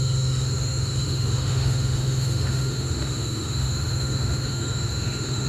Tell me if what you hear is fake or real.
fake